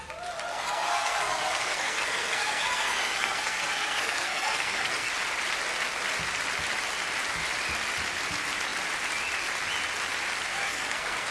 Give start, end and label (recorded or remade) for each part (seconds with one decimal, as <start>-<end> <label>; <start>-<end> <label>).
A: 0.0-0.5 recorded; 0.5-5.1 remade; 5.1-10.5 recorded; 10.5-11.3 remade